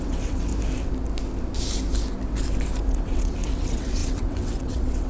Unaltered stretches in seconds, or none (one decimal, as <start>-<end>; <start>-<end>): 0.5-2.9